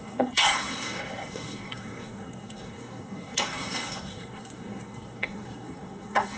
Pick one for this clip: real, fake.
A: fake